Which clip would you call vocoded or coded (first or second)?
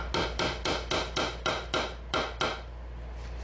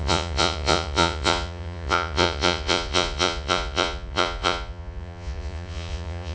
second